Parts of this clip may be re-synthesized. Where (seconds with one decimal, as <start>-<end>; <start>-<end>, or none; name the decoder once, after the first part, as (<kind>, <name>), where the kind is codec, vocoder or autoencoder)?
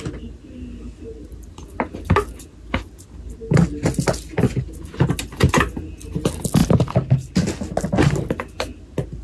none